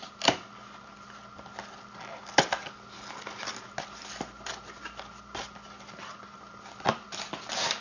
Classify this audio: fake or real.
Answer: real